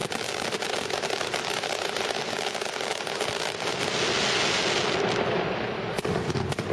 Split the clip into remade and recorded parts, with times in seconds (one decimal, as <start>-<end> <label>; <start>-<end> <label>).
0.0-2.3 remade; 2.3-6.7 recorded